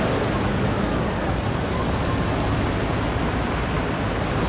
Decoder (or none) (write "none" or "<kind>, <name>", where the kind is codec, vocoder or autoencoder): none